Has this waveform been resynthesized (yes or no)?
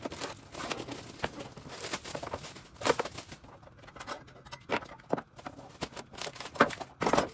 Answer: no